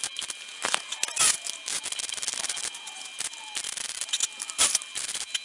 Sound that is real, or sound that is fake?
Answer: real